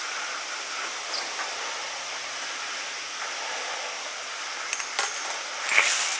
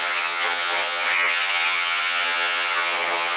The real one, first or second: first